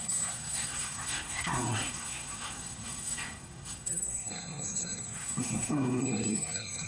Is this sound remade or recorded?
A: remade